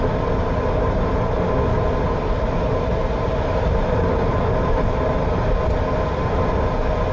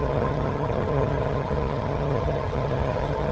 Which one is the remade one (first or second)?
second